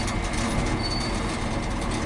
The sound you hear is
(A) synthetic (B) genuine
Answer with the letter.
B